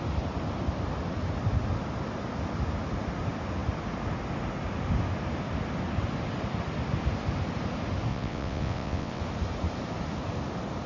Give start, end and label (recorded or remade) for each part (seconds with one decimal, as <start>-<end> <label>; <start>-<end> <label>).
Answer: 0.0-8.1 recorded; 8.1-9.2 remade; 9.2-10.9 recorded